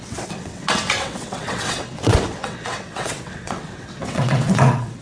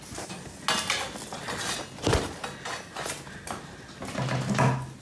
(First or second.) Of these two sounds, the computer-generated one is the first